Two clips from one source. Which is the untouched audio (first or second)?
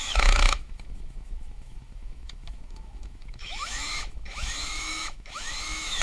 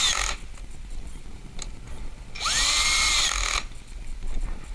second